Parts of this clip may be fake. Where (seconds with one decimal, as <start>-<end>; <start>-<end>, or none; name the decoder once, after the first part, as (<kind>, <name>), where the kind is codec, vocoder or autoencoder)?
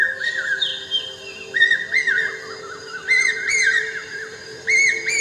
0.0-0.7 (vocoder, BigVGAN v2); 2.6-5.2